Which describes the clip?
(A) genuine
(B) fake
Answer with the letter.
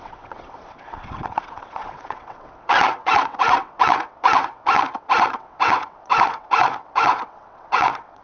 B